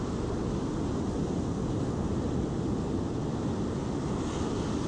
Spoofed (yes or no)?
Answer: no